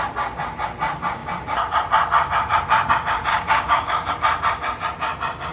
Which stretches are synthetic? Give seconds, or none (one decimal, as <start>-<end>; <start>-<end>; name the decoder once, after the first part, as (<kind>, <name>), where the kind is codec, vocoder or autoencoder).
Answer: 3.3-4.1 (codec, DAC)